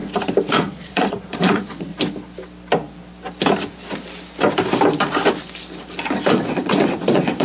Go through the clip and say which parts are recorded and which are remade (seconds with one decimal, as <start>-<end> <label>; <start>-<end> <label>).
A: 0.0-0.5 recorded; 0.5-1.9 remade; 1.9-6.3 recorded; 6.3-7.4 remade